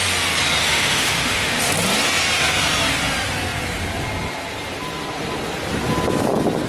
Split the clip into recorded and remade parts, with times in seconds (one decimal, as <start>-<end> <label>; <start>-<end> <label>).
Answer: 0.0-0.6 recorded; 0.6-1.6 remade; 1.6-6.7 recorded